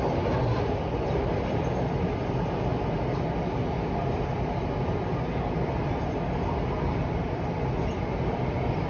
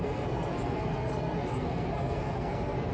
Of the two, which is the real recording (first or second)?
first